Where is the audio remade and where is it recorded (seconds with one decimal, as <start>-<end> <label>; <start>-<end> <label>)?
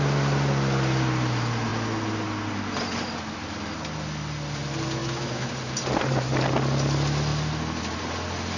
0.0-5.0 recorded; 5.0-5.5 remade; 5.5-8.6 recorded